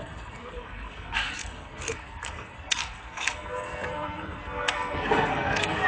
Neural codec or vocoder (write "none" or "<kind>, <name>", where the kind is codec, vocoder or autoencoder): codec, SNAC